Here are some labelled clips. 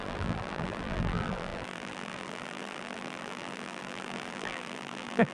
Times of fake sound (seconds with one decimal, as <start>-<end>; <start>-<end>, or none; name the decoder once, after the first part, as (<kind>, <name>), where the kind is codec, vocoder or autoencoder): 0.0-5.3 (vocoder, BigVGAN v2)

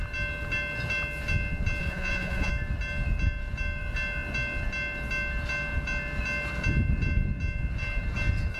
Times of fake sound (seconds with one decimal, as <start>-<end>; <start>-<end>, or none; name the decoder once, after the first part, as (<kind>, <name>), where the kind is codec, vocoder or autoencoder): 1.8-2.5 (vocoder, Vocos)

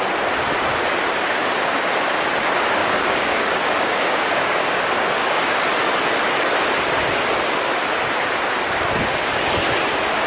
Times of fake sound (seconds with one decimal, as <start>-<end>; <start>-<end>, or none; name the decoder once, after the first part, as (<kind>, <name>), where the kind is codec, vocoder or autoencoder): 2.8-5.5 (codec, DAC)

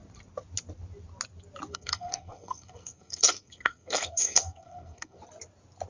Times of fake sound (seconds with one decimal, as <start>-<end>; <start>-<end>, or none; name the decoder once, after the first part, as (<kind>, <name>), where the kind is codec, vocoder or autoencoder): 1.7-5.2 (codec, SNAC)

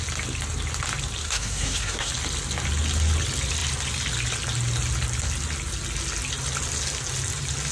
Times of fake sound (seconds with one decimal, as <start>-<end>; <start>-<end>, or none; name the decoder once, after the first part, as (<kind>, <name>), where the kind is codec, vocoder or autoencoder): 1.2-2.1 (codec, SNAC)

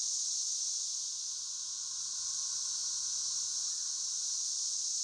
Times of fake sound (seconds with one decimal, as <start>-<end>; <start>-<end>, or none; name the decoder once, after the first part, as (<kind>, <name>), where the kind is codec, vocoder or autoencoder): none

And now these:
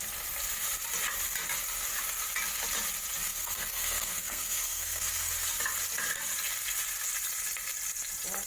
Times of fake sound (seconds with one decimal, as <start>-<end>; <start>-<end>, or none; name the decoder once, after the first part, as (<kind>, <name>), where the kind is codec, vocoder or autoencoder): 3.3-5.3 (codec, SNAC)